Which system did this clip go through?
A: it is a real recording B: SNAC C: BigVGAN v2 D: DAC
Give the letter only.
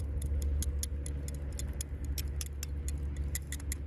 A